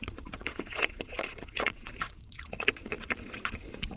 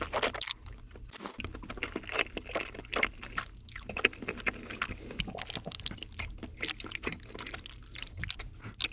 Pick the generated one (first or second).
first